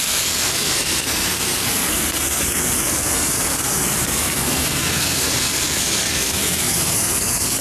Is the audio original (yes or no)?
no